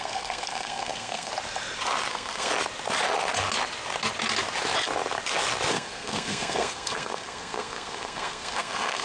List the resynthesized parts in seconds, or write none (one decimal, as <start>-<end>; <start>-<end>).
0.0-1.3; 2.1-2.5; 5.7-9.0